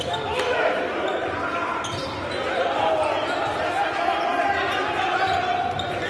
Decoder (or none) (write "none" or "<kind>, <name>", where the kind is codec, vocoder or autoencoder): none